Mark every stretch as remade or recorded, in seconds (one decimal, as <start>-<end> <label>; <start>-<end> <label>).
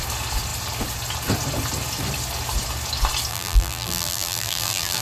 0.0-3.3 recorded; 3.3-5.0 remade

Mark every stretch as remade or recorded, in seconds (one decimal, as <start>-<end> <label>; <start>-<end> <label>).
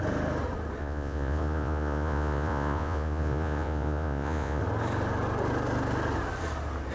0.0-0.8 recorded; 0.8-4.6 remade; 4.6-6.9 recorded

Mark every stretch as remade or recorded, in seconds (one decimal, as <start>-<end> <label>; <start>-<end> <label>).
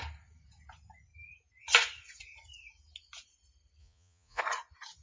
0.0-3.8 recorded; 3.8-4.4 remade; 4.4-5.0 recorded